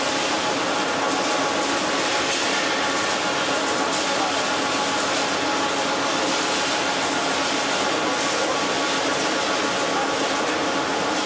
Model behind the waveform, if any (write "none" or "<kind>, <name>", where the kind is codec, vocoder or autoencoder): none